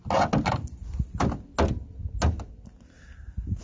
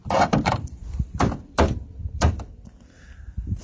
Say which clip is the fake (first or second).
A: second